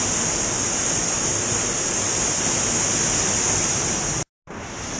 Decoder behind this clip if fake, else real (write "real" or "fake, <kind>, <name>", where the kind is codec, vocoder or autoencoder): real